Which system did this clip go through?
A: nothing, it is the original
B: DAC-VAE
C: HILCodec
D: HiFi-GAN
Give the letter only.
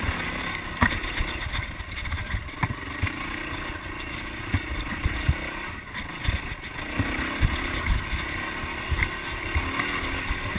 A